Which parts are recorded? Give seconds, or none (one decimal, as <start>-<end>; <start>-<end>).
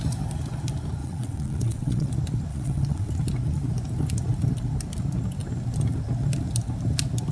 0.0-1.0; 2.1-2.5; 3.1-7.3